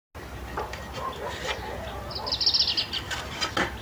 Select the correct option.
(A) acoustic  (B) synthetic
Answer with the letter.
A